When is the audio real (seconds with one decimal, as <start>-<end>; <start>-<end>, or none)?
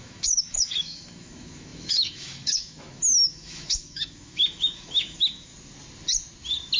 5.5-6.8